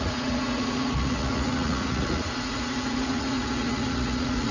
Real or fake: fake